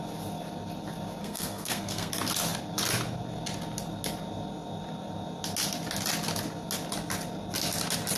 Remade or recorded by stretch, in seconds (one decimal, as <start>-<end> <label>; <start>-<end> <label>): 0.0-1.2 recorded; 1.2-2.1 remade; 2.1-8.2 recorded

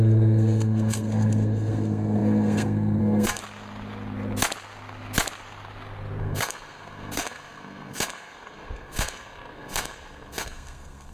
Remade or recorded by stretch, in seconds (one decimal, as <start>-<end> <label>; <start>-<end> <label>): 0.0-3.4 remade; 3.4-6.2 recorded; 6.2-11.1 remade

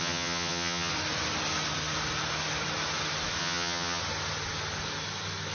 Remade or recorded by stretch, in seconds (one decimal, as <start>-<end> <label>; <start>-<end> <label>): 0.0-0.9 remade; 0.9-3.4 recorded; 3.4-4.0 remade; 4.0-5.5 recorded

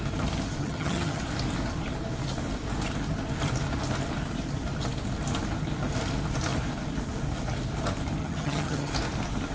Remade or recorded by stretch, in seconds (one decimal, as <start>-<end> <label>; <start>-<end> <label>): 0.0-0.6 recorded; 0.6-1.2 remade; 1.2-8.2 recorded; 8.2-8.9 remade; 8.9-9.5 recorded

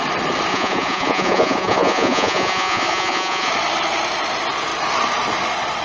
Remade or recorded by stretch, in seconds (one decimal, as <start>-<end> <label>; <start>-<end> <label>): 0.0-0.5 recorded; 0.5-3.5 remade; 3.5-5.8 recorded